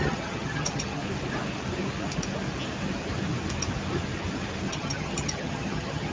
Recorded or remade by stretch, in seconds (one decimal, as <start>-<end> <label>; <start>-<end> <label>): 0.0-1.0 remade; 1.0-4.7 recorded; 4.7-6.1 remade